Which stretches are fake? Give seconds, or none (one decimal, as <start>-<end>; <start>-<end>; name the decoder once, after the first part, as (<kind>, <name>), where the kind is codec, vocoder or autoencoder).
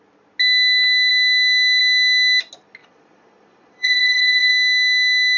2.8-4.5 (vocoder, Vocos)